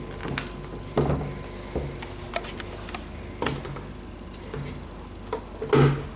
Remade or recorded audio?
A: recorded